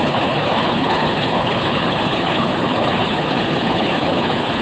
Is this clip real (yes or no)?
no